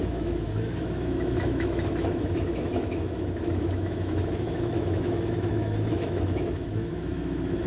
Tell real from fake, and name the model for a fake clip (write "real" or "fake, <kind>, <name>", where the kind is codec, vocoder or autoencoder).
fake, autoencoder, DAC-VAE